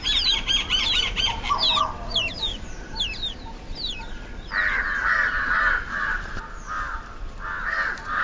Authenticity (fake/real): fake